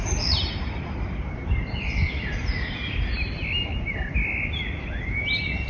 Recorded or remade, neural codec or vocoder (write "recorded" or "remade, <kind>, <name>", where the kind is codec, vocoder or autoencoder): recorded